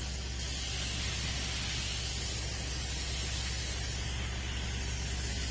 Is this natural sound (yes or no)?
yes